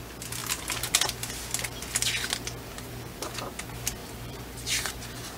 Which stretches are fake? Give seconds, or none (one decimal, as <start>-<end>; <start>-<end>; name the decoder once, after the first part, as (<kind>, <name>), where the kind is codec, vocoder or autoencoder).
0.4-0.9 (vocoder, BigVGAN v2); 4.0-4.9